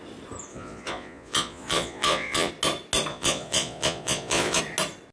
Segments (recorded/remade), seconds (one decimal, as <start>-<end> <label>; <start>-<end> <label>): 0.0-0.5 recorded; 0.5-2.5 remade; 2.5-3.1 recorded; 3.1-4.6 remade; 4.6-5.1 recorded